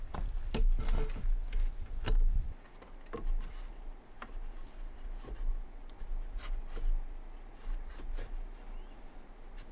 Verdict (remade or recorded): recorded